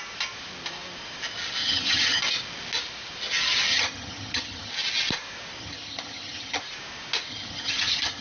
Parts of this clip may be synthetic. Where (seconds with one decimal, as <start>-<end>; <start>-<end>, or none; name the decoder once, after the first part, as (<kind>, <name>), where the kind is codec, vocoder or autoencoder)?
1.6-2.2 (vocoder, HiFi-GAN); 3.7-4.7; 5.6-6.6; 7.3-8.2